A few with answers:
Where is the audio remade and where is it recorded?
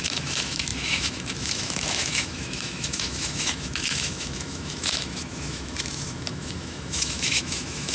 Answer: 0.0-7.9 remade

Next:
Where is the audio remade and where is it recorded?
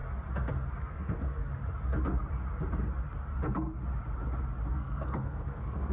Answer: 0.0-0.8 recorded; 0.8-1.4 remade; 1.4-4.7 recorded; 4.7-5.9 remade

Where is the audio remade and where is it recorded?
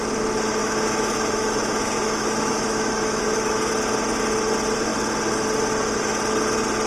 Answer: 0.0-0.6 recorded; 0.6-3.7 remade; 3.7-6.9 recorded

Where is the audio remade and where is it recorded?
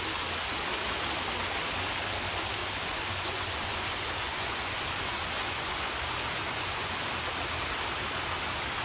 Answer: 0.0-2.6 recorded; 2.6-5.9 remade; 5.9-6.4 recorded; 6.4-7.1 remade; 7.1-8.8 recorded